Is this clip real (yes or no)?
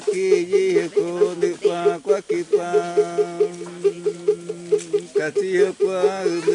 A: yes